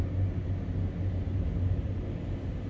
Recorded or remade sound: recorded